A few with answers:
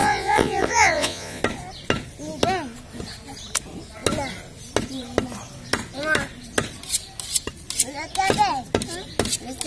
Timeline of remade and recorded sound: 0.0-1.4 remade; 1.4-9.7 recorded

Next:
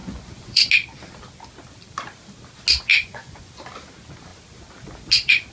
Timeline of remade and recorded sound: 0.0-0.7 remade; 0.7-2.9 recorded; 2.9-3.5 remade; 3.5-5.5 recorded

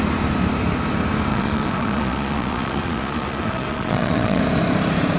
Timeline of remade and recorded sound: 0.0-1.3 recorded; 1.3-4.4 remade; 4.4-5.2 recorded

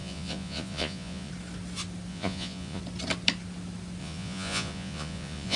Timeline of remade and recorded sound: 0.0-1.3 remade; 1.3-2.1 recorded; 2.1-2.8 remade; 2.8-4.0 recorded; 4.0-5.6 remade

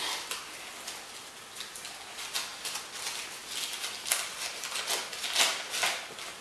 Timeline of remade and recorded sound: 0.0-6.4 recorded

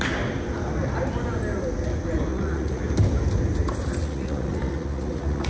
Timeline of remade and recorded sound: 0.0-2.3 recorded; 2.3-2.8 remade; 2.8-4.0 recorded; 4.0-5.5 remade

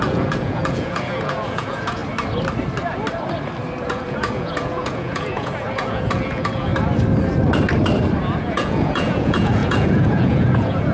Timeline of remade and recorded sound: 0.0-2.0 remade; 2.0-3.8 recorded; 3.8-6.7 remade; 6.7-8.4 recorded; 8.4-10.9 remade

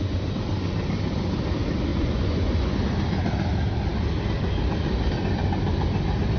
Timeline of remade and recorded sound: 0.0-1.9 recorded; 1.9-2.8 remade; 2.8-6.4 recorded